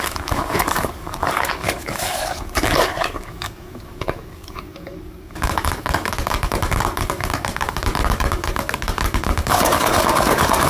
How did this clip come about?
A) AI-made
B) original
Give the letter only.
A